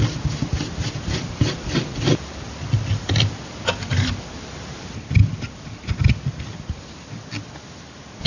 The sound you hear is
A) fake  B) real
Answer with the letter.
B